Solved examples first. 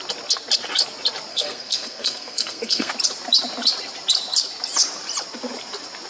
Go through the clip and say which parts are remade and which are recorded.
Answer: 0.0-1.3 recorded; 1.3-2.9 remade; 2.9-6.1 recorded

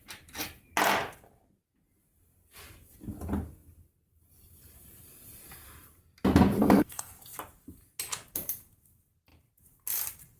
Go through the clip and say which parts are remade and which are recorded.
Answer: 0.0-6.6 recorded; 6.6-7.1 remade; 7.1-10.4 recorded

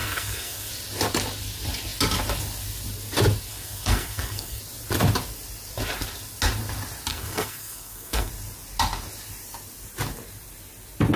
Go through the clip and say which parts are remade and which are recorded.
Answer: 0.0-0.7 remade; 0.7-3.5 recorded; 3.5-4.6 remade; 4.6-7.1 recorded; 7.1-8.3 remade; 8.3-11.2 recorded